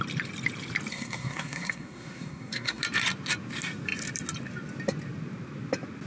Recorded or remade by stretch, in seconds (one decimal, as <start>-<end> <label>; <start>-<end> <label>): 0.0-0.9 recorded; 0.9-2.8 remade; 2.8-6.1 recorded